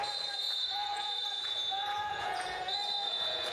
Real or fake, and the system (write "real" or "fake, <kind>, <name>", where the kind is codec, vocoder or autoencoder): fake, vocoder, Vocos